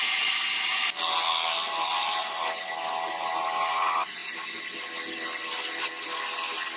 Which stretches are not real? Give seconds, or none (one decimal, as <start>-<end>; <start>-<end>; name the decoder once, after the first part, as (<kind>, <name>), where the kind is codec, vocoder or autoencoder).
none